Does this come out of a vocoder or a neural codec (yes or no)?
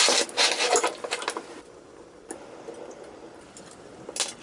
no